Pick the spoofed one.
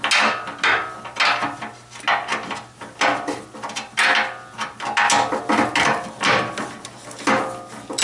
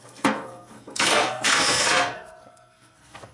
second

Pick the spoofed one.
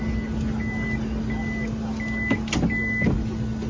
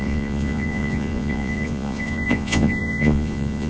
second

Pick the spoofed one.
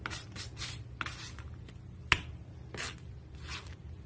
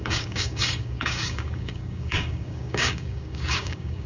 second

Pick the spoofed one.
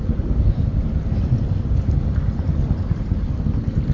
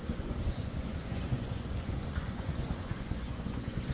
second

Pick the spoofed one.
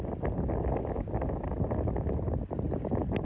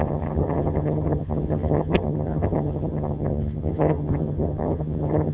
second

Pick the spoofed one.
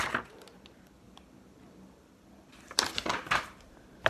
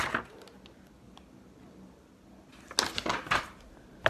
first